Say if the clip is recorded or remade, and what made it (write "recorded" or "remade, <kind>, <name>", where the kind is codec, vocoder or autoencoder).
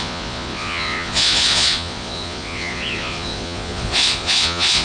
remade, vocoder, Vocos